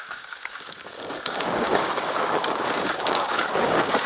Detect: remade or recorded remade